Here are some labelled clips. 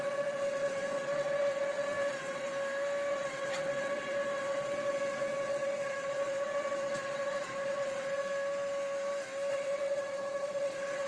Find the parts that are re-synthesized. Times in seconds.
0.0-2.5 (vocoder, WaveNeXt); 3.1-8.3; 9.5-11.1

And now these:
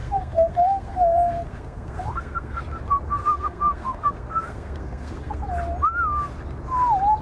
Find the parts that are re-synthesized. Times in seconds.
0.0-2.6 (codec, SNAC); 3.2-5.5

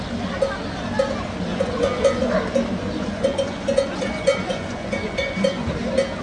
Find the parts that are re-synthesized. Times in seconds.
1.5-2.3 (vocoder, Vocos); 2.8-5.7

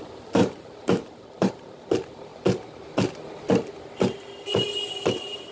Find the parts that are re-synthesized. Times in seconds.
0.0-2.3 (vocoder, BigVGAN v2); 4.9-5.5

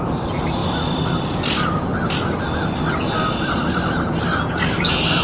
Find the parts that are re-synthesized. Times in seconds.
none